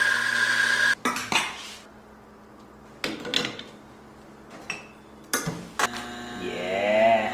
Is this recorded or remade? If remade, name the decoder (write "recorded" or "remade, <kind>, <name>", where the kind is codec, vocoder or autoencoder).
recorded